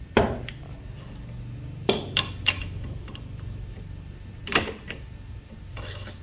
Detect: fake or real fake